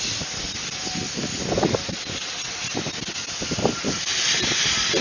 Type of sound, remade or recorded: recorded